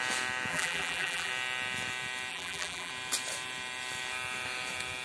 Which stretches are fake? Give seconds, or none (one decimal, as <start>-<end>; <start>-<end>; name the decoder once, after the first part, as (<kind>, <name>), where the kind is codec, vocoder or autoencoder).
0.5-1.3 (vocoder, BigVGAN v2); 2.3-2.9